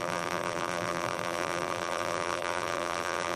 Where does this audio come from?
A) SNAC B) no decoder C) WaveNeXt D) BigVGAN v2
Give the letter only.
D